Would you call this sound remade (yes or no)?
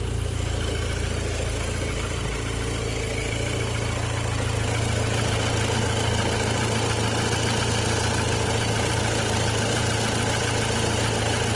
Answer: no